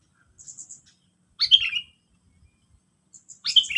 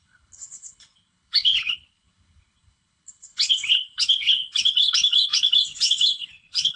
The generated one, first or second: second